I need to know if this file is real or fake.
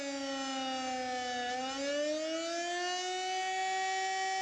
real